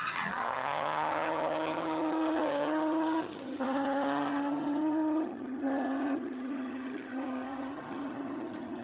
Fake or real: fake